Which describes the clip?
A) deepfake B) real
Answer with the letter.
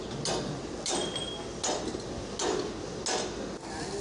B